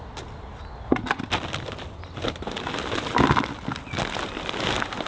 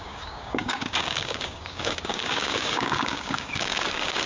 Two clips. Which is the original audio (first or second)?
first